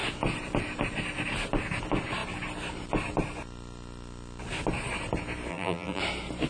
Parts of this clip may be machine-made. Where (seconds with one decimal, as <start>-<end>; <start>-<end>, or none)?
5.5-6.0